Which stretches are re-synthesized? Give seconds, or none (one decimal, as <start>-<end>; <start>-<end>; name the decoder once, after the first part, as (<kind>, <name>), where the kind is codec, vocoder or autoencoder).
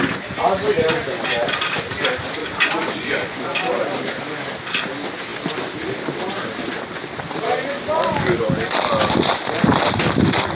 2.4-3.4 (vocoder, Vocos)